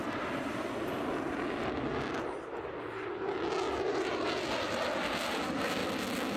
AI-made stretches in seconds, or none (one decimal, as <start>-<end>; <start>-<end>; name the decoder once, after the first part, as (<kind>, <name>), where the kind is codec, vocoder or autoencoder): none

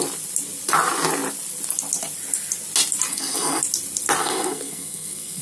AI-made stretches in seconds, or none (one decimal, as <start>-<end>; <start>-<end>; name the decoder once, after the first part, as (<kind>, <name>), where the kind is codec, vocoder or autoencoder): 3.1-3.6 (codec, SNAC); 4.2-5.4

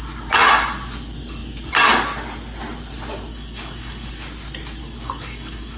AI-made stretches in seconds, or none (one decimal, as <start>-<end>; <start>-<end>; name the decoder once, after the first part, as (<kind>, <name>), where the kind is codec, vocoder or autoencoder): 3.3-4.1 (codec, DAC); 4.8-5.8

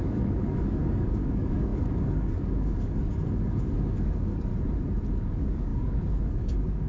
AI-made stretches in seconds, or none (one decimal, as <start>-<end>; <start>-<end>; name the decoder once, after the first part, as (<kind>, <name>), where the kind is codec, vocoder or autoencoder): 0.0-4.5 (codec, DAC); 5.1-6.9

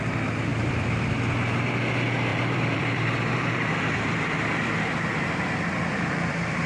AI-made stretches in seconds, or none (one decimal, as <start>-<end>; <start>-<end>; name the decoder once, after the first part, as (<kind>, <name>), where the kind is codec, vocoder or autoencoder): 0.5-1.1 (vocoder, BigVGAN v2); 2.3-6.0

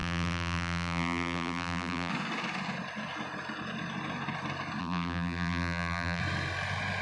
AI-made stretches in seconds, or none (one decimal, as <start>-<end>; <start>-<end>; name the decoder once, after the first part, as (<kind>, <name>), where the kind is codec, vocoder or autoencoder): 0.0-2.1 (vocoder, BigVGAN v2); 4.8-6.2

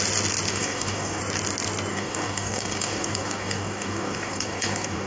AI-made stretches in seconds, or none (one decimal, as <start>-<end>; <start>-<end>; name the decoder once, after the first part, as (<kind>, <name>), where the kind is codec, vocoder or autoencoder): 0.5-1.2 (codec, DAC); 1.9-5.1